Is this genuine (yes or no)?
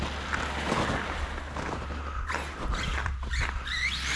yes